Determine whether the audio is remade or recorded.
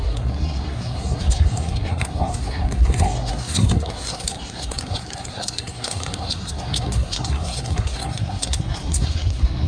remade